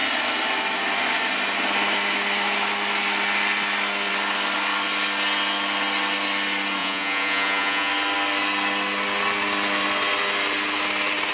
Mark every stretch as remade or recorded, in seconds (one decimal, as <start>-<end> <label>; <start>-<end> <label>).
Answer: 0.0-6.8 recorded; 6.8-7.9 remade; 7.9-11.3 recorded